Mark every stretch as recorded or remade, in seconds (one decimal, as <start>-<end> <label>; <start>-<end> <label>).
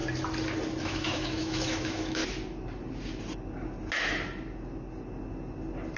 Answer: 0.0-0.8 recorded; 0.8-2.2 remade; 2.2-6.0 recorded